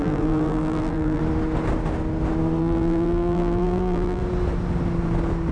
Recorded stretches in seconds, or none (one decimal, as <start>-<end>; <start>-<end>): 1.2-2.6; 4.2-5.5